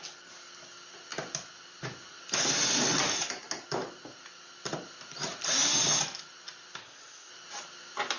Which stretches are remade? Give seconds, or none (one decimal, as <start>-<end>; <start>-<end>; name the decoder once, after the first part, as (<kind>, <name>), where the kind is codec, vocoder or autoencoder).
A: 6.8-7.3 (codec, ZipCodec)

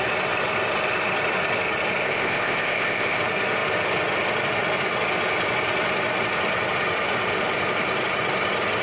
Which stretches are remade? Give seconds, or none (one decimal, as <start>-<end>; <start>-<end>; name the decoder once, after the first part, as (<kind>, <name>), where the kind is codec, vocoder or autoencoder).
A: 2.0-3.2 (codec, ZipCodec)

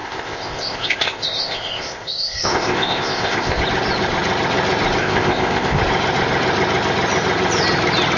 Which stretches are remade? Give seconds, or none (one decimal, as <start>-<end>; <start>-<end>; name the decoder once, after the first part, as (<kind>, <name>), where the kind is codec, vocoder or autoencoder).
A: 0.0-3.6 (codec, ZipCodec); 5.0-5.8

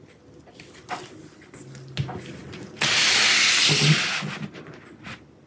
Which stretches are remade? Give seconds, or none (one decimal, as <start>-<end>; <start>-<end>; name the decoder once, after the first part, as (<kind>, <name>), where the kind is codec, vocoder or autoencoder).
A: none

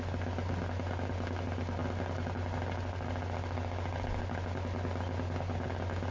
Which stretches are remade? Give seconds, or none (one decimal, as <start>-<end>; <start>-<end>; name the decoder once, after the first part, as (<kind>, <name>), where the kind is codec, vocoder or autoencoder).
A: none